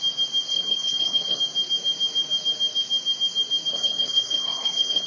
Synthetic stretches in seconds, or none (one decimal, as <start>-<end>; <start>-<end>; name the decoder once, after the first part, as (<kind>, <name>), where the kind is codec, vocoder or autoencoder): 0.5-1.4 (codec, SNAC); 3.7-5.1